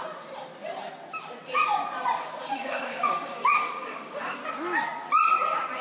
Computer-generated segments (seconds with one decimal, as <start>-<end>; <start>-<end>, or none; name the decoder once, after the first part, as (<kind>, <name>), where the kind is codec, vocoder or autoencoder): 2.4-4.4 (codec, DAC)